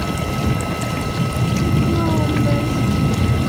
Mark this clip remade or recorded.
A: recorded